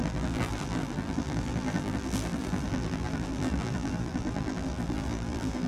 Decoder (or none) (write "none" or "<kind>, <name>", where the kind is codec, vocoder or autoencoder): vocoder, BigVGAN v2